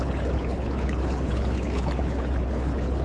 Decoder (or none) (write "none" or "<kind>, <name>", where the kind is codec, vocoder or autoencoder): codec, HILCodec